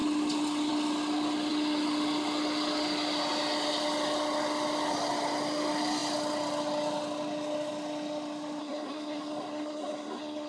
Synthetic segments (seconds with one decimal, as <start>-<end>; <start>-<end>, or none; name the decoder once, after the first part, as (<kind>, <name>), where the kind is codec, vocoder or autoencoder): 8.6-10.5 (codec, SNAC)